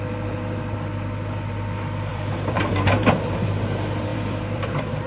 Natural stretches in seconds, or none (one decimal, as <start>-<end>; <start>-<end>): 0.0-2.1; 2.7-4.1